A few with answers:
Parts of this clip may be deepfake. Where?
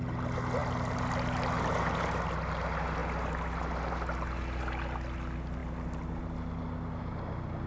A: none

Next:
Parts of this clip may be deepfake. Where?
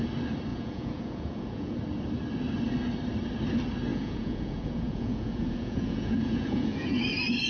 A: 0.5-1.8; 3.9-7.0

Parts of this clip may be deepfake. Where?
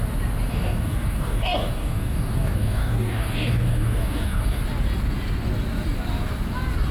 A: 0.5-4.6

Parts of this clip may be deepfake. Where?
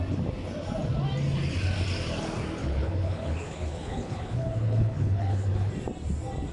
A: 2.6-5.7